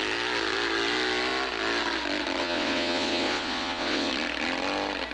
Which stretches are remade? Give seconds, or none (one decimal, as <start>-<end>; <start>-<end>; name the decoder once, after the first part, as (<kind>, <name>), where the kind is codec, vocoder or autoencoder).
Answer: 2.4-4.1 (vocoder, WaveNeXt)